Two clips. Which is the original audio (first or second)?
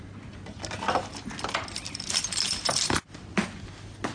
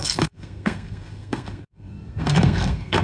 first